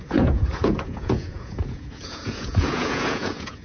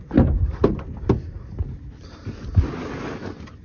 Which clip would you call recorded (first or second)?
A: second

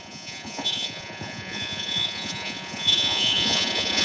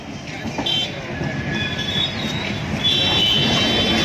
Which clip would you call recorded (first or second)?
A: second